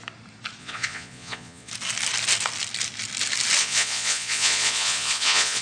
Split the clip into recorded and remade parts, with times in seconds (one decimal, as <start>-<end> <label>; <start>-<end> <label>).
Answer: 0.0-0.6 recorded; 0.6-1.7 remade; 1.7-3.6 recorded; 3.6-5.6 remade